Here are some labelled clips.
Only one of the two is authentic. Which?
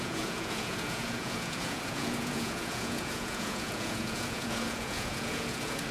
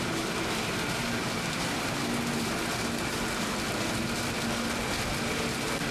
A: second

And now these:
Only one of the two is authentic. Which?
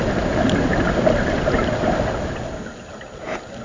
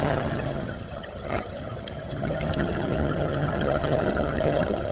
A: first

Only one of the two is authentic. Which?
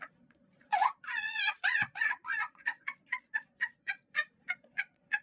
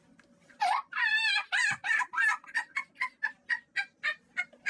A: second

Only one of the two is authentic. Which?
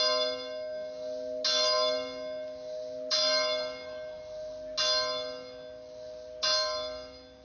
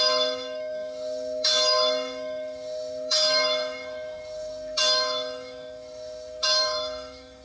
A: first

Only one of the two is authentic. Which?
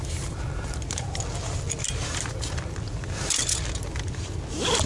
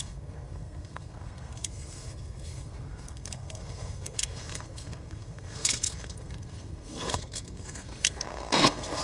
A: first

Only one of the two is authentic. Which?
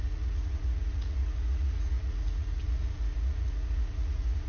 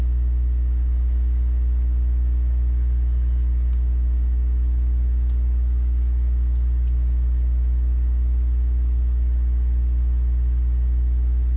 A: second